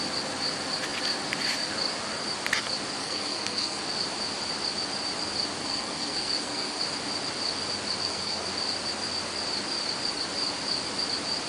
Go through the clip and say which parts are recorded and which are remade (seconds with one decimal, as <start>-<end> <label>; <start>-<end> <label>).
0.0-3.0 recorded; 3.0-3.8 remade; 3.8-5.6 recorded; 5.6-6.8 remade; 6.8-8.0 recorded; 8.0-8.5 remade; 8.5-11.5 recorded